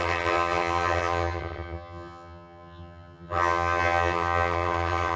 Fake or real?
fake